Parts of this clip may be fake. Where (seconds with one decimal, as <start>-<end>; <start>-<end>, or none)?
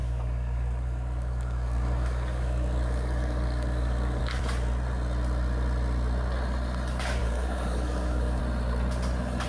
0.0-4.2; 7.2-8.4